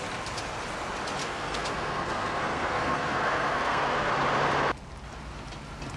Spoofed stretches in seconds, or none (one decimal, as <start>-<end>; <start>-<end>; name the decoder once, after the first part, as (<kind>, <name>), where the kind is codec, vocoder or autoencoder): 1.2-4.1 (codec, SNAC)